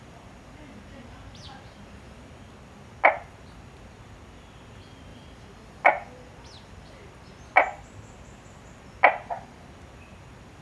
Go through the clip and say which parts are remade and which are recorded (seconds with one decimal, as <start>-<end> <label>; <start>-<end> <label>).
0.0-10.6 recorded